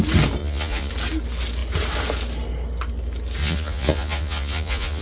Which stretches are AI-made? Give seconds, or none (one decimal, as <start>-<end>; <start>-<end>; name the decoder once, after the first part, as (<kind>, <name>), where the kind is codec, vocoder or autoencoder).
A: 0.4-0.9 (vocoder, Vocos); 3.4-5.0